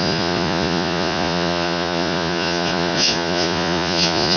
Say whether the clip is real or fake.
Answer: fake